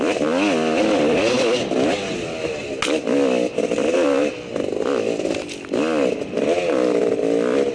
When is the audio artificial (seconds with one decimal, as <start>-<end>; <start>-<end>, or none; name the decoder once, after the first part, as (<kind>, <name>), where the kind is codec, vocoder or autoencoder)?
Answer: none